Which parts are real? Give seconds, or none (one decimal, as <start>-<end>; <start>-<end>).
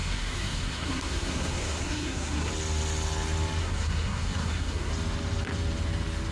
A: 2.5-3.6; 4.9-6.3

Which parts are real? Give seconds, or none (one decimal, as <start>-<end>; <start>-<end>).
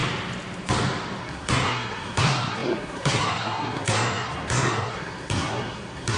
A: 0.0-1.2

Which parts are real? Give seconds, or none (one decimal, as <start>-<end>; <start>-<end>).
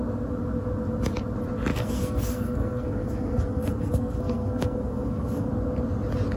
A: 0.0-1.7; 5.5-6.4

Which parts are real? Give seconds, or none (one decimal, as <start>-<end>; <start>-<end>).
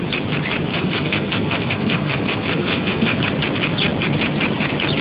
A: 0.0-0.7; 3.2-5.0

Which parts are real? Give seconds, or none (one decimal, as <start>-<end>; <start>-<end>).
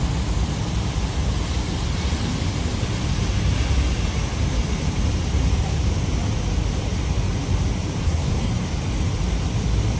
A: 0.0-8.0; 8.5-10.0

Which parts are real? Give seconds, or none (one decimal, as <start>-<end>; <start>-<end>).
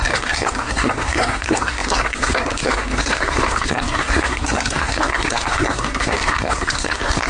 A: none